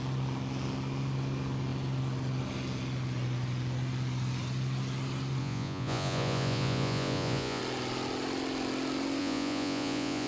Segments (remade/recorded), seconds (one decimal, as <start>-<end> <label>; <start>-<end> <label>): 0.0-5.4 recorded; 5.4-7.6 remade; 7.6-9.2 recorded; 9.2-10.3 remade